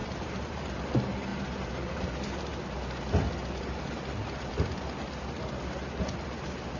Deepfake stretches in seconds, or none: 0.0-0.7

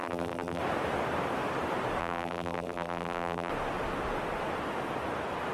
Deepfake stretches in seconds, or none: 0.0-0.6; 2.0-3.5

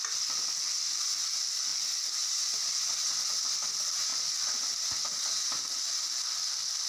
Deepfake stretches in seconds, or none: none

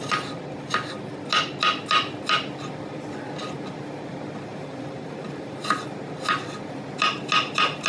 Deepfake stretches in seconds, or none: 4.5-5.8

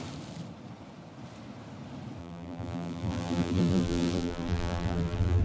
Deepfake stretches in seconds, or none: 2.2-5.4